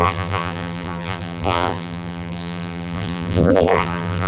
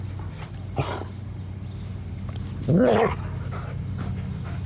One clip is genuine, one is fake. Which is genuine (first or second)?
second